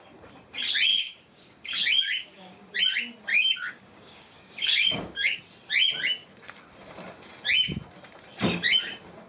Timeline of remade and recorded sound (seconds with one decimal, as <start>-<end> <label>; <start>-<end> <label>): 0.0-0.9 recorded; 0.9-2.8 remade; 2.8-3.3 recorded; 3.3-5.4 remade; 5.4-9.3 recorded